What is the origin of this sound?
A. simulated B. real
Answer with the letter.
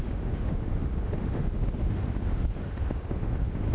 A